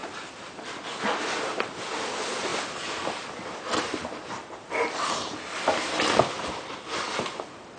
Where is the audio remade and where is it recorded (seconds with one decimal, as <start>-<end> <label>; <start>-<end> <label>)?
0.0-7.8 recorded